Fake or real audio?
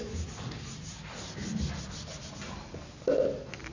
real